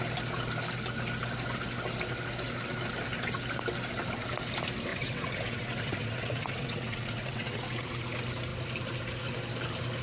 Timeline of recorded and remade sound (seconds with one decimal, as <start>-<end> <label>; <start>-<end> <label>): 0.0-4.9 recorded; 4.9-7.9 remade; 7.9-10.0 recorded